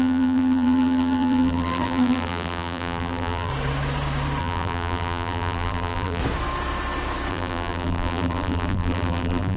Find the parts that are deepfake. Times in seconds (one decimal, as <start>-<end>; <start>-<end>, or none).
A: 0.0-3.5; 4.4-6.2; 7.3-9.6